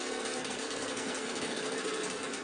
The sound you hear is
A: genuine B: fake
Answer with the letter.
B